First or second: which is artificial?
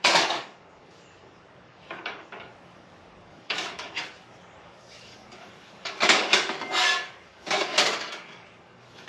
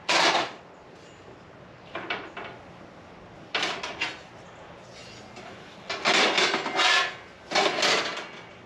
first